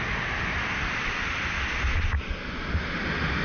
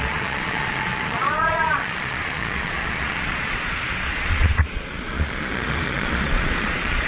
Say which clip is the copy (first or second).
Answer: second